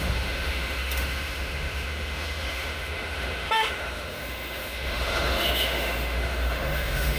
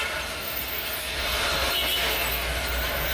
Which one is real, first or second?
second